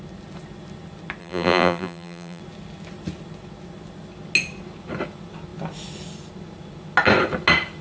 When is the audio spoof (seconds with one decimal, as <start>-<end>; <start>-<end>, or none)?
1.2-2.4